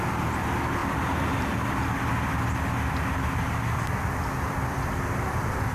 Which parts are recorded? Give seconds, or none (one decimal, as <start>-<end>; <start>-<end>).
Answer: none